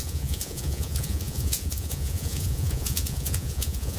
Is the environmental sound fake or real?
fake